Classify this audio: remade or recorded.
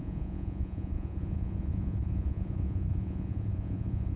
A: remade